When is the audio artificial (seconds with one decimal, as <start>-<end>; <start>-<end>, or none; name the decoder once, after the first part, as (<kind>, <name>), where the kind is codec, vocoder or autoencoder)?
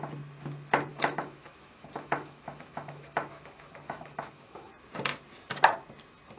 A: 0.9-4.7 (autoencoder, DAC-VAE)